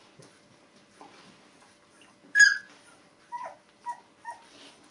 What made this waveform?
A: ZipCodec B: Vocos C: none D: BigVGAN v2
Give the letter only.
C